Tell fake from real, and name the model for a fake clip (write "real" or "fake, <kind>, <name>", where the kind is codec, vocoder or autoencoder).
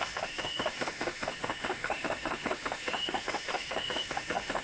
fake, autoencoder, DAC-VAE